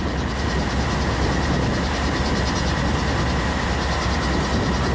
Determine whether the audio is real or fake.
real